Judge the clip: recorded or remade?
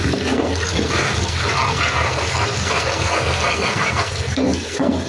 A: remade